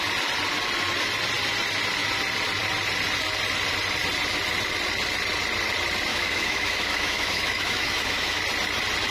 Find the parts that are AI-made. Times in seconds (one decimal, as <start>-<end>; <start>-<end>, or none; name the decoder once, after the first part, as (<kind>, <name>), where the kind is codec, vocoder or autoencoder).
6.1-8.4 (autoencoder, DAC-VAE)